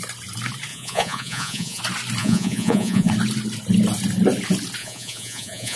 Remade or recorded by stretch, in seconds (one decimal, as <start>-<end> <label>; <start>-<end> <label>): 0.0-0.7 recorded; 0.7-1.8 remade; 1.8-2.2 recorded; 2.2-3.1 remade; 3.1-4.8 recorded; 4.8-5.8 remade